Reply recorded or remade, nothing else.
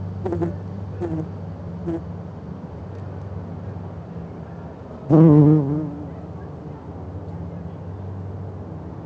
recorded